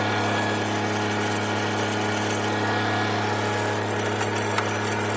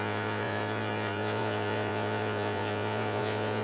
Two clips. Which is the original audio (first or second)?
first